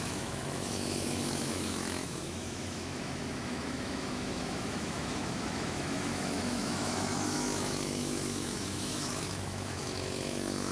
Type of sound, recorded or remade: remade